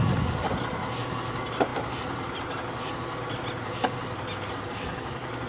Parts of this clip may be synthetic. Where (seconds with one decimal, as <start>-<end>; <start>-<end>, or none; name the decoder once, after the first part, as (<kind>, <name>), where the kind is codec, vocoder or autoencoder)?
none